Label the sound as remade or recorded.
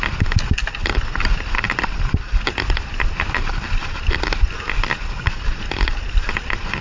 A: recorded